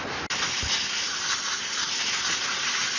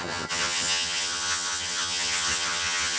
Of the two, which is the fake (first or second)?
second